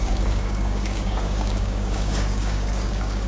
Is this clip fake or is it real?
fake